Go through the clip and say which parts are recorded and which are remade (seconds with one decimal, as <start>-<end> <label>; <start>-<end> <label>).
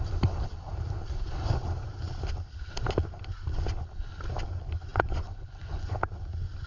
0.0-4.9 recorded; 4.9-5.9 remade; 5.9-6.7 recorded